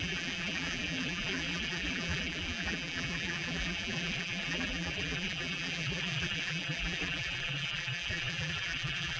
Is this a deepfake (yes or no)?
yes